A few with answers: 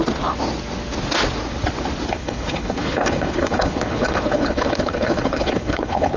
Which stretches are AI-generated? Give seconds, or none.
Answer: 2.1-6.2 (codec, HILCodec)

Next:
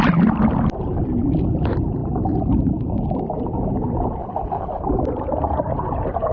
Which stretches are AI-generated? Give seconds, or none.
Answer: 4.2-4.8 (codec, HILCodec)